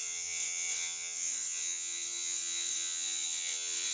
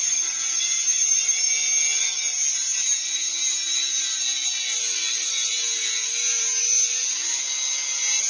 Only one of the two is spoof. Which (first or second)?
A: first